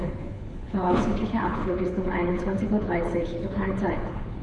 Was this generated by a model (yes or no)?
yes